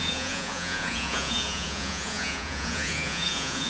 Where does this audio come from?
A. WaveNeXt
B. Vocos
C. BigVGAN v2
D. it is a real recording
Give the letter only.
B